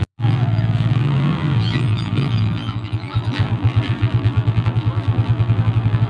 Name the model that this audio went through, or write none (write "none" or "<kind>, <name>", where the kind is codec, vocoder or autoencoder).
vocoder, BigVGAN v2